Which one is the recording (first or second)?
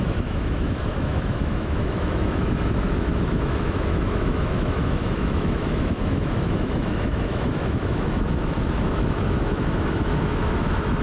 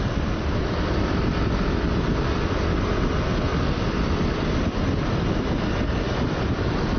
second